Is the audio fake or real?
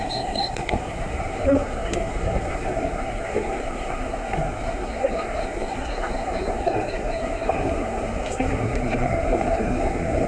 fake